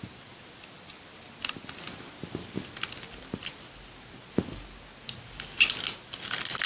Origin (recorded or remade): recorded